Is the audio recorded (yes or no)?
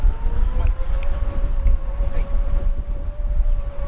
no